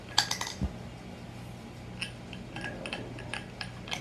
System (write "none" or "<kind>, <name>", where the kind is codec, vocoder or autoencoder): none